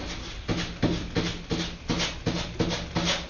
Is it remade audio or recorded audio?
recorded